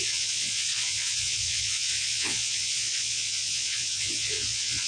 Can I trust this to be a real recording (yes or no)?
no